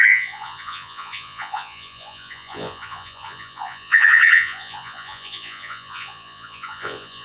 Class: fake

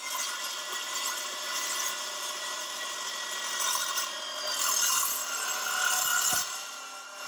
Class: real